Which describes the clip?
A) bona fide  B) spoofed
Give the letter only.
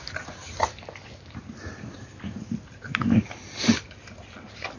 A